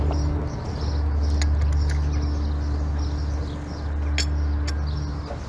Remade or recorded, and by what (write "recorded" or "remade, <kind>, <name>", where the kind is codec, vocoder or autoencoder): recorded